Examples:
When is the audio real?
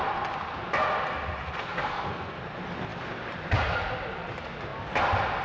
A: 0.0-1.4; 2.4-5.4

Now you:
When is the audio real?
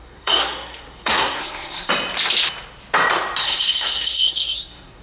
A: 1.9-3.4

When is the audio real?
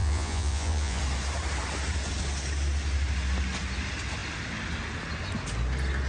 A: 1.0-6.1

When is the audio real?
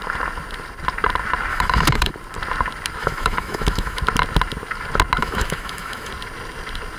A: 0.0-1.5; 2.1-3.0; 4.0-5.2; 6.1-7.0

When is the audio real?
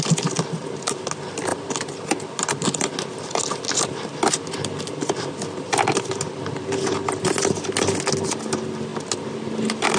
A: 0.0-10.0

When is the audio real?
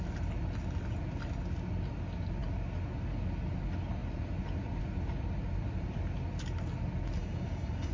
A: 0.0-7.2